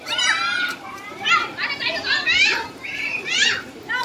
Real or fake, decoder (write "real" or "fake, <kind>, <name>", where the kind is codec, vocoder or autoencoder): fake, vocoder, BigVGAN v2